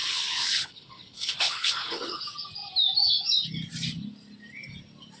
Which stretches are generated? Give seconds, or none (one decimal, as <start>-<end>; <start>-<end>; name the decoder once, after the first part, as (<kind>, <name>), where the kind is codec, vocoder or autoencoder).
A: 0.0-2.2 (codec, HILCodec)